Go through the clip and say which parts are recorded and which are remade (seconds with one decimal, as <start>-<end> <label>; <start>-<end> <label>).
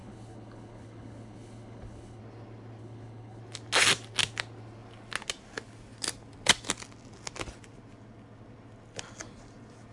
0.0-2.2 remade; 2.2-2.8 recorded; 2.8-3.4 remade; 3.4-9.9 recorded